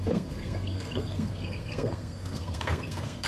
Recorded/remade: remade